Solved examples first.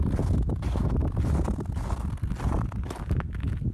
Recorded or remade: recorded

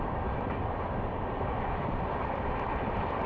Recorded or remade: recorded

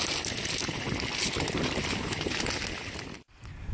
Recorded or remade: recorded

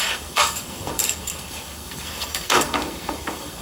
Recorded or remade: remade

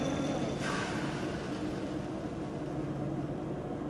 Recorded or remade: recorded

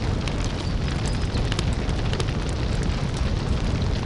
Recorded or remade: recorded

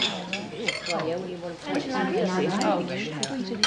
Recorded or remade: recorded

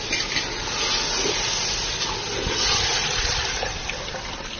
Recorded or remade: recorded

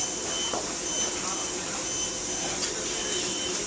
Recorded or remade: recorded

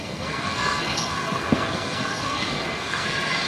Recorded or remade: remade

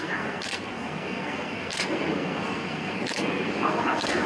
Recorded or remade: remade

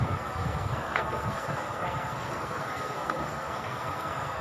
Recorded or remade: remade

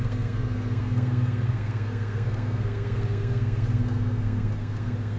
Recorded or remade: remade